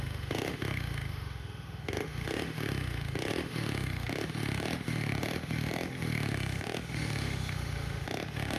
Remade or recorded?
remade